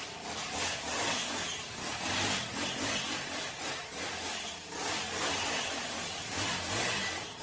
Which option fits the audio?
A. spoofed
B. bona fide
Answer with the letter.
B